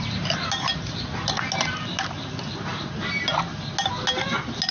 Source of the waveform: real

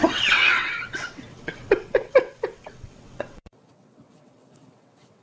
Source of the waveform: fake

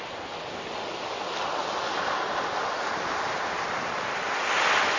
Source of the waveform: real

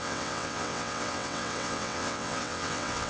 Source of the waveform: fake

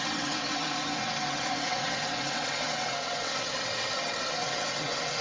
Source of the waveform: fake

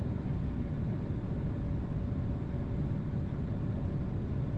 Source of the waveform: real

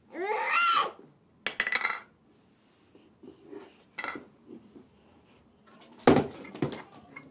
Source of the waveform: real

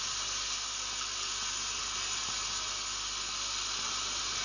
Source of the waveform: real